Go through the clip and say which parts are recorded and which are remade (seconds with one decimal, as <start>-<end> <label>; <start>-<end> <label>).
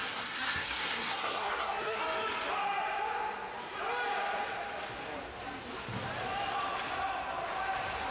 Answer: 0.0-2.0 remade; 2.0-8.1 recorded